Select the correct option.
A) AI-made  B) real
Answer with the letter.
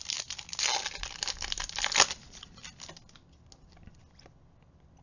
B